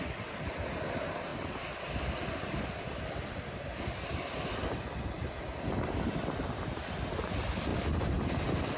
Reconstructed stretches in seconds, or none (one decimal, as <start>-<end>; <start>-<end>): 1.3-3.8; 7.7-8.3